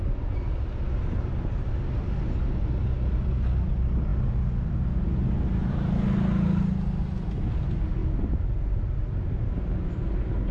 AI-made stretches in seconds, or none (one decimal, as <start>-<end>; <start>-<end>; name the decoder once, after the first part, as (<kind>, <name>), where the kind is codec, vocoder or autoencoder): none